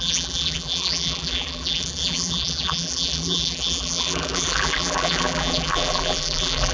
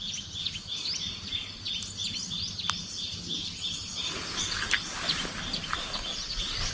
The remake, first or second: first